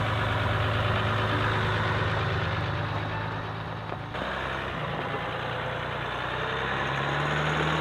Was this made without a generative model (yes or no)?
yes